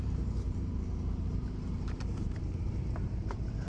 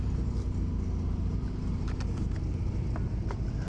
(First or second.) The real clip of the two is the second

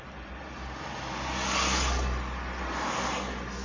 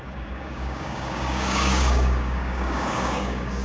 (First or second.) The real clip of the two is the first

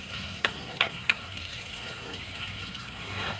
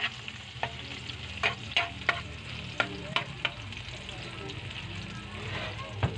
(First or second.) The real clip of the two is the second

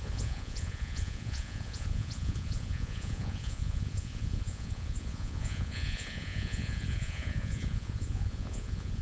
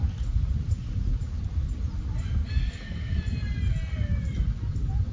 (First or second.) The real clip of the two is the second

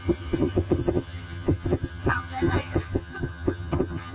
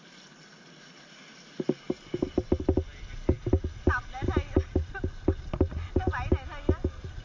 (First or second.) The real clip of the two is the second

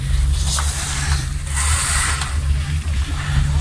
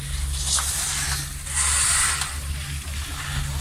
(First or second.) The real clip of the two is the second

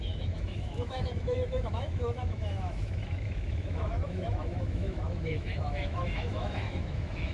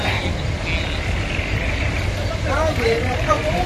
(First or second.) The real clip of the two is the second